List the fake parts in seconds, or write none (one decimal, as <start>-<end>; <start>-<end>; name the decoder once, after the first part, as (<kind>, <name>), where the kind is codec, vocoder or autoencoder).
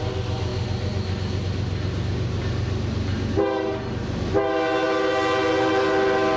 none